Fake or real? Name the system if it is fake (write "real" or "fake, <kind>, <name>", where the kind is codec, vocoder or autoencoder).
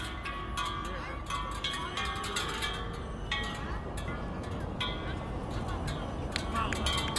real